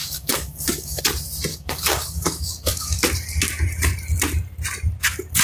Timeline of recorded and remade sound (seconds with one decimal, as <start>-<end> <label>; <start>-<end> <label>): 0.0-1.0 remade; 1.0-1.5 recorded; 1.5-3.0 remade; 3.0-5.4 recorded